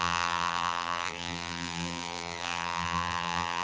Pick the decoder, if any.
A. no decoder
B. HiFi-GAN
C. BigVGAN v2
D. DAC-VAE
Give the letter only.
C